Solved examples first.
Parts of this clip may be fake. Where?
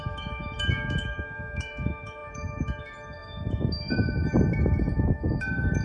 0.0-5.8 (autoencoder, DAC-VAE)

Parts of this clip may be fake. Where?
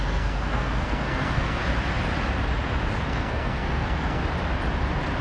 0.0-1.6 (codec, SNAC); 3.0-4.2